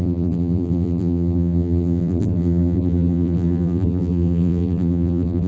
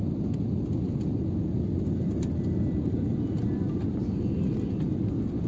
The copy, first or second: first